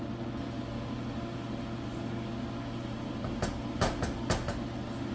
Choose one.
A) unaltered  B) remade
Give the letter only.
A